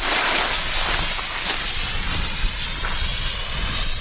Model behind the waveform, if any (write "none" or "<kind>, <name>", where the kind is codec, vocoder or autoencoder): none